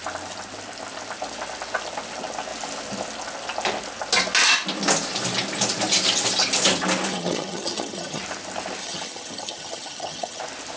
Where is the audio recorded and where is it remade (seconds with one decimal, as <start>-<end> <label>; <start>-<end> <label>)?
0.0-7.1 recorded; 7.1-8.2 remade; 8.2-8.8 recorded; 8.8-10.4 remade; 10.4-10.8 recorded